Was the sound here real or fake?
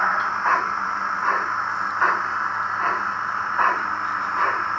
real